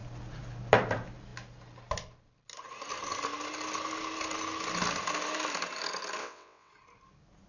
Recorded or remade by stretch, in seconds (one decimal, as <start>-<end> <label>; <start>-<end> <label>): 0.0-6.2 recorded; 6.2-6.7 remade; 6.7-7.5 recorded